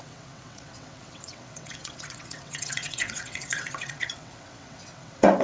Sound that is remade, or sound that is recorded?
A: remade